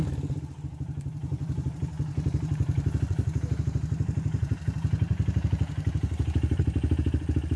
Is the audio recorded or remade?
remade